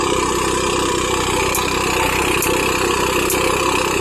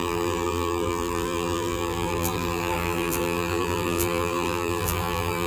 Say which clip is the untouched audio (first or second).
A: first